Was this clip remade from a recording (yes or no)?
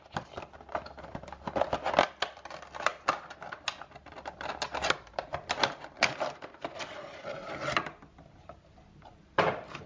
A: no